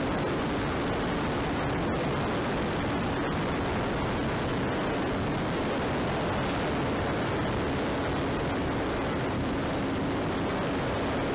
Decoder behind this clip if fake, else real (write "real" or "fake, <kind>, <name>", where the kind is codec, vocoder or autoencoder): real